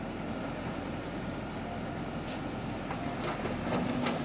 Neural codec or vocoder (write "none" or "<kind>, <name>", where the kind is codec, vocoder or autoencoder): none